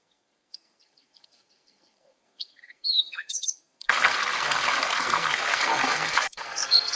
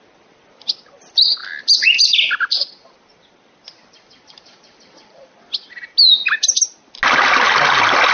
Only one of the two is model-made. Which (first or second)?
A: first